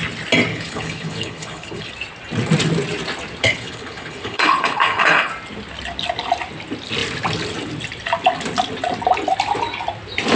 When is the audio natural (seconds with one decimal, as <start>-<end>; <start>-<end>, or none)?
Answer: 0.0-0.5; 1.9-3.4; 5.3-10.4